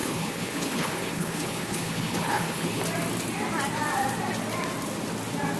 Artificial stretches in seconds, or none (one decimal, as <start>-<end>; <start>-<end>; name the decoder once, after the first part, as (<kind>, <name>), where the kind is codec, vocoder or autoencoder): 0.0-2.8 (codec, HILCodec)